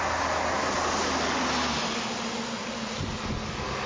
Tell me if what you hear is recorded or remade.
recorded